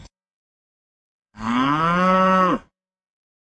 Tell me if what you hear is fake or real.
fake